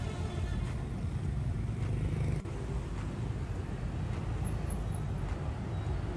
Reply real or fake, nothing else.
real